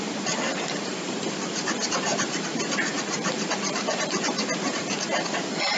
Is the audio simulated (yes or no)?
yes